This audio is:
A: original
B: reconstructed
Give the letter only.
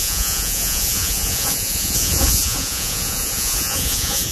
B